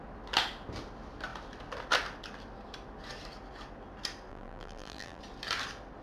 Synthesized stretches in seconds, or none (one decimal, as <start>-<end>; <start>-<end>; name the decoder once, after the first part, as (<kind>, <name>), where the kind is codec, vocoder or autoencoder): 4.3-5.2 (vocoder, BigVGAN v2)